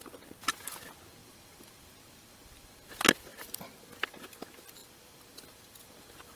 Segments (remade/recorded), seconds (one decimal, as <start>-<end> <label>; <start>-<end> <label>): 0.0-1.2 recorded; 1.2-2.7 remade; 2.7-4.8 recorded; 4.8-6.0 remade; 6.0-6.4 recorded